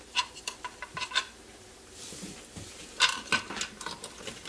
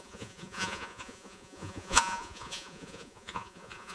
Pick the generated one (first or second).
second